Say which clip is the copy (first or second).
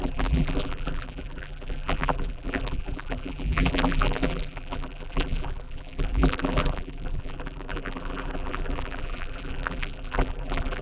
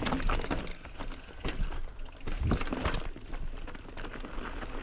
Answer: first